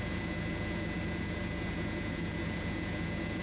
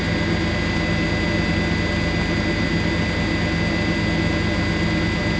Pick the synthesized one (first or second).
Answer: first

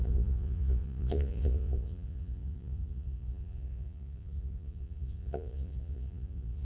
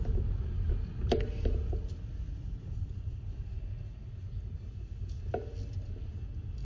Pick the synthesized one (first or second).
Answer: first